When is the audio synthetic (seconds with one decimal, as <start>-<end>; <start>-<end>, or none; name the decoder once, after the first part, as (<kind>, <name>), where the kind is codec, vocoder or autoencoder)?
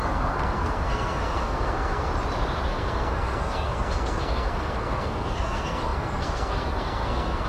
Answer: 0.0-2.1 (codec, SNAC); 2.7-7.5